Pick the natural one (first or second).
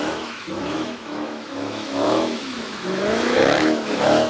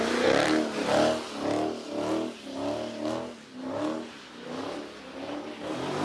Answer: second